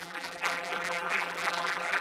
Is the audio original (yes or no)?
no